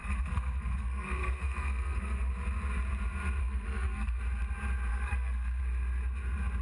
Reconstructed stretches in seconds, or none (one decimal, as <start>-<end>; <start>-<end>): 0.0-2.3; 3.4-4.2; 4.9-5.6